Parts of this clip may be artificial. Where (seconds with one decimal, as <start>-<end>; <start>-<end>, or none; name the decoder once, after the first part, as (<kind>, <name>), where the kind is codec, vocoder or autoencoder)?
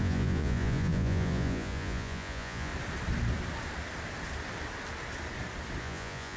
0.0-2.7 (vocoder, Vocos); 5.8-6.4